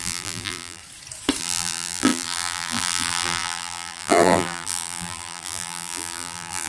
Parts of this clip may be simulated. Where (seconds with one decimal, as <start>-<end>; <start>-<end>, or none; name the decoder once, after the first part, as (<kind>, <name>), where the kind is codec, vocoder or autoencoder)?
0.0-0.8 (vocoder, BigVGAN v2); 1.4-6.7